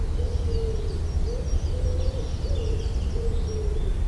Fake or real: real